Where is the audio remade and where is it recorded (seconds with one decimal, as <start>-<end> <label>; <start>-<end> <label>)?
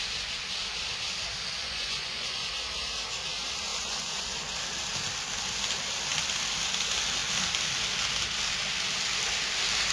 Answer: 0.0-1.6 recorded; 1.6-2.5 remade; 2.5-3.7 recorded; 3.7-4.5 remade; 4.5-9.9 recorded